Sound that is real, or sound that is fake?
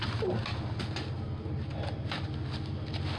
real